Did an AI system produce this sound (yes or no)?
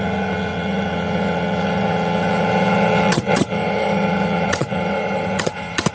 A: yes